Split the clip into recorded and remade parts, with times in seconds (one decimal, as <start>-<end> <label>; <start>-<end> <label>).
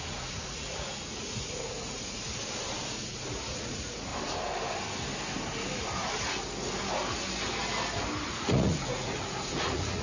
0.0-2.2 remade; 2.2-2.8 recorded; 2.8-4.1 remade; 4.1-8.3 recorded; 8.3-10.0 remade